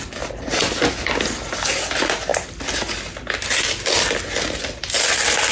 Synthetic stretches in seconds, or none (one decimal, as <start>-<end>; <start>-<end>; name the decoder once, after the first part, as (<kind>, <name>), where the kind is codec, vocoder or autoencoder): none